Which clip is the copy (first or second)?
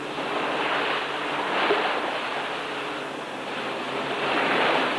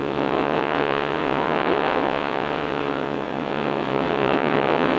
second